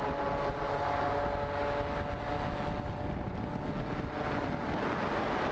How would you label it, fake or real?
real